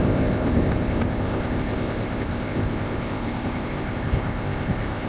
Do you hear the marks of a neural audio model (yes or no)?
yes